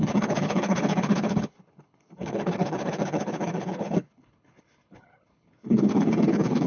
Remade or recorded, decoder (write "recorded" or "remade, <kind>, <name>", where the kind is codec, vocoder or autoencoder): remade, codec, HILCodec